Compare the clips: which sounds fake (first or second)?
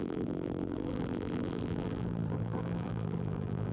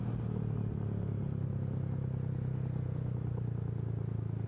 first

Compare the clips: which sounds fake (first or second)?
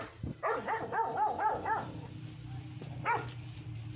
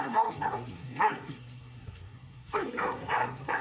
second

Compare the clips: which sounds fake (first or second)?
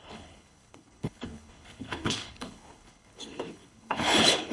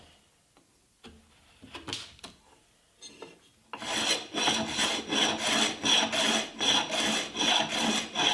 first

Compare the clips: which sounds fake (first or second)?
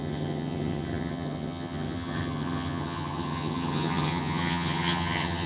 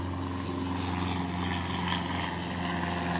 first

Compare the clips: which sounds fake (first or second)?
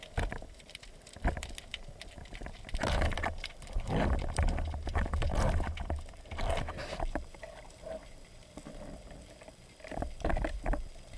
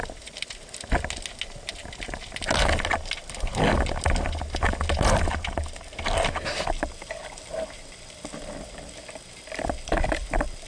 first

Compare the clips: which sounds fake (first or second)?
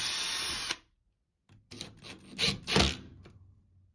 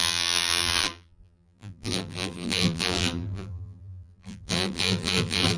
second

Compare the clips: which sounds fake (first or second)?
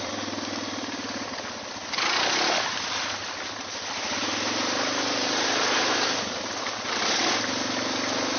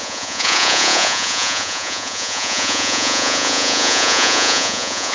second